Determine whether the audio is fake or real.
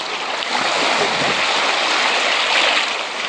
real